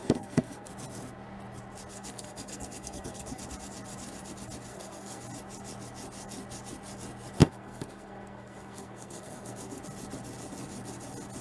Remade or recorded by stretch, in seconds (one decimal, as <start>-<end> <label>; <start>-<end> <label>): 0.0-0.7 remade; 0.7-1.9 recorded; 1.9-3.4 remade; 3.4-4.7 recorded; 4.7-5.2 remade; 5.2-7.4 recorded; 7.4-9.8 remade; 9.8-11.4 recorded